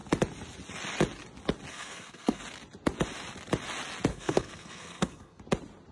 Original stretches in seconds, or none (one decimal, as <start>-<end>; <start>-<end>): 0.0-1.7; 2.4-4.1; 5.4-5.9